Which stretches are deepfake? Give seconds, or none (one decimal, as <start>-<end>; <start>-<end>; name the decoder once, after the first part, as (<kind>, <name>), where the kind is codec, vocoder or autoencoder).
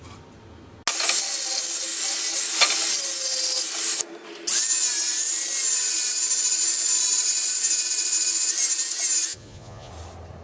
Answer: 9.3-9.9 (vocoder, Vocos)